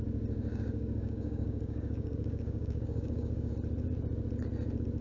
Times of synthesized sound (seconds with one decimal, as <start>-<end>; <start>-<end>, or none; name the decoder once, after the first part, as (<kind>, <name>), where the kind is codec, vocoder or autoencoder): 0.5-3.5 (codec, DAC)